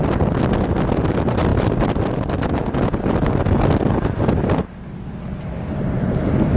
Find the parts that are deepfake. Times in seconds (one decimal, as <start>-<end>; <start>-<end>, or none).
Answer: none